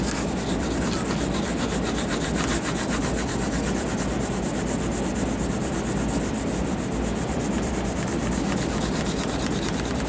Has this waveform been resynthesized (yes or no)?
no